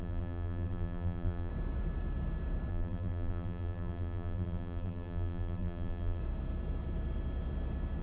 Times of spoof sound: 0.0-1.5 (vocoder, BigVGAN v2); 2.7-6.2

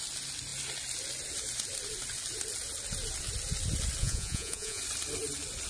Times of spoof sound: 4.0-4.8 (vocoder, Vocos)

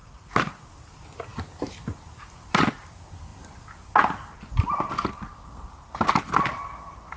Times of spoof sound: 0.0-0.6 (vocoder, Vocos)